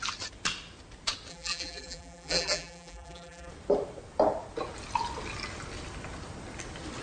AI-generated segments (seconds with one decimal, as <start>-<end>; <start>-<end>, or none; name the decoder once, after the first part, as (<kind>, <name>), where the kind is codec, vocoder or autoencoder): 1.3-3.5 (vocoder, BigVGAN v2)